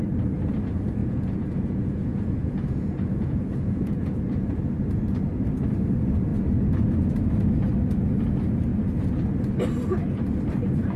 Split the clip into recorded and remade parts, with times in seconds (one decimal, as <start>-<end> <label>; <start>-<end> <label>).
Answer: 0.0-1.0 recorded; 1.0-4.6 remade; 4.6-11.0 recorded